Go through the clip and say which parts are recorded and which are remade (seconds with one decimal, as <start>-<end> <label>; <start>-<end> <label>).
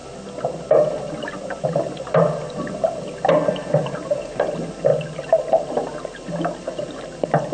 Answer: 0.0-7.5 recorded